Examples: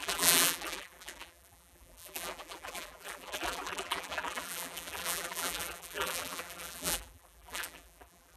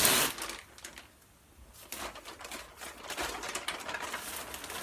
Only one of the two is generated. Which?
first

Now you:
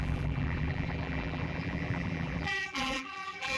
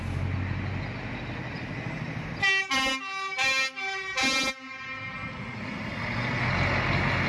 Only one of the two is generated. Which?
first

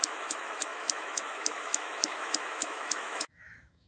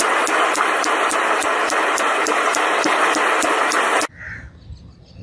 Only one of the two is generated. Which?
first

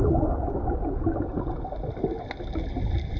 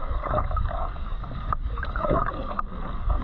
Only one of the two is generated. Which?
second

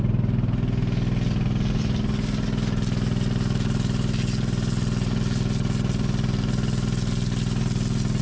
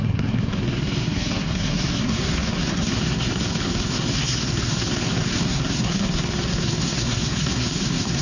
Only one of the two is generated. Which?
second